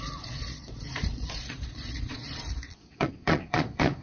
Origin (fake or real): fake